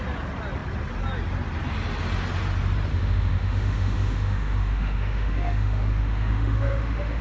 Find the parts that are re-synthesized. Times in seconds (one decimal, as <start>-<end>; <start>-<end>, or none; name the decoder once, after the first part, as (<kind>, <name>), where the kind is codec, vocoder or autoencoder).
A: 2.9-7.2 (autoencoder, DAC-VAE)